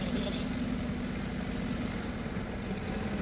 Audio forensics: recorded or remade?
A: recorded